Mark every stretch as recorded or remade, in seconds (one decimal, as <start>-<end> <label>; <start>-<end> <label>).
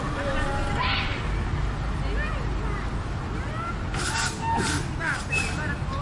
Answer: 0.0-6.0 recorded